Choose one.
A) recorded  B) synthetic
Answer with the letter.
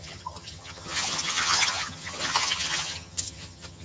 B